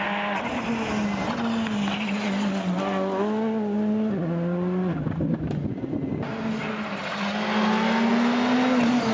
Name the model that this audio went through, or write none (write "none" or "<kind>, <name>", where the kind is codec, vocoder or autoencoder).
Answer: none